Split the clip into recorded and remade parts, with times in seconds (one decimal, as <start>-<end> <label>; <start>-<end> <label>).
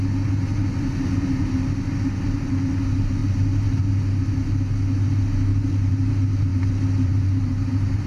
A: 0.0-3.2 recorded; 3.2-3.9 remade; 3.9-5.5 recorded; 5.5-6.1 remade; 6.1-6.5 recorded; 6.5-8.1 remade